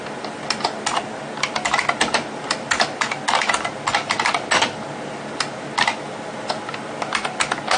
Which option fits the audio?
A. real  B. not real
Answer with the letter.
A